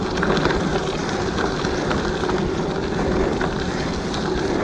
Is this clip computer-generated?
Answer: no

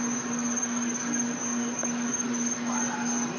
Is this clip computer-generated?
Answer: no